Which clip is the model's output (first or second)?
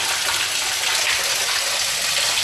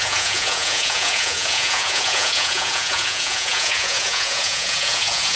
second